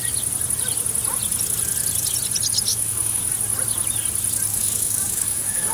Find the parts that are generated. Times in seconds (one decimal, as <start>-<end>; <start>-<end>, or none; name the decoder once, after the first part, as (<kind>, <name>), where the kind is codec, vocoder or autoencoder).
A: 2.7-3.3 (codec, DAC); 4.5-5.7